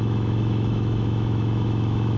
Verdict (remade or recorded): remade